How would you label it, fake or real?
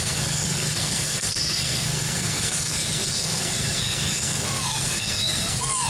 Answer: fake